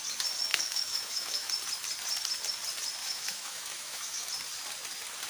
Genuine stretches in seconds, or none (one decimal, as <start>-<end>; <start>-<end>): 0.0-0.5; 1.5-3.0; 4.3-5.3